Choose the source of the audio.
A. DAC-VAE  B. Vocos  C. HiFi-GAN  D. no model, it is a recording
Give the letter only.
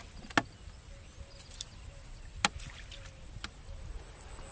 D